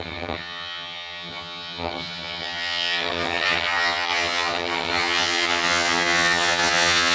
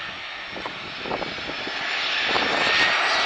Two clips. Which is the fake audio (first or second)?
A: first